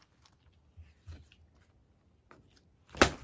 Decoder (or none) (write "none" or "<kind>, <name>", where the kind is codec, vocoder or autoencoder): none